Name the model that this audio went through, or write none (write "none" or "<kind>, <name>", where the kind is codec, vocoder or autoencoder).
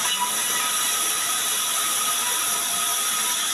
none